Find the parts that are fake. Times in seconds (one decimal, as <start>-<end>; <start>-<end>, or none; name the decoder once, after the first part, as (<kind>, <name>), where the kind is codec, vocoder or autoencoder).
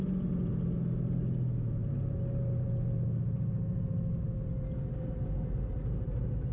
none